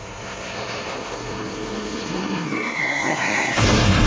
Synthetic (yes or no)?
yes